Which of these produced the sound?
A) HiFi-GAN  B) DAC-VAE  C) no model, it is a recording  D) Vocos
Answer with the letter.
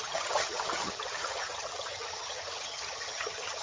A